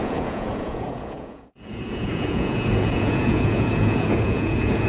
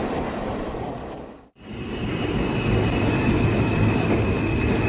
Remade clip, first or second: first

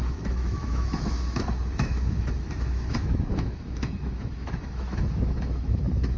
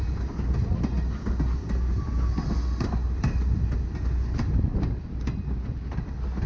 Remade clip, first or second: first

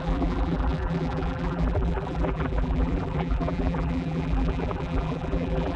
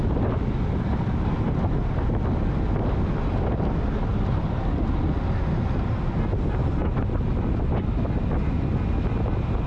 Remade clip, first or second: first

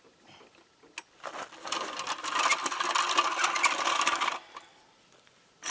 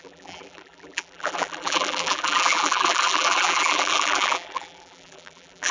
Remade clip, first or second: second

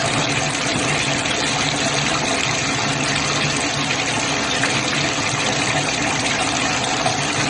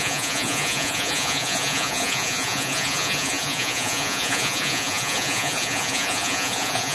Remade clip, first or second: second